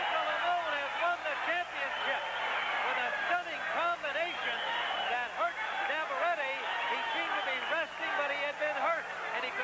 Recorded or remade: recorded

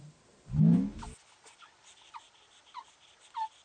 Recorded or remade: recorded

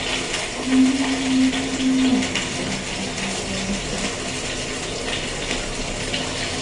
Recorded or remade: recorded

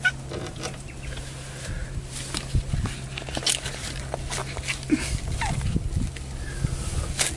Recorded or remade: recorded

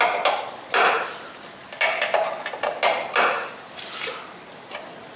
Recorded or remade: recorded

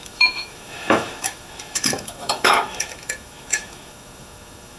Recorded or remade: remade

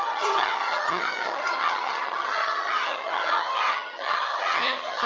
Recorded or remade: remade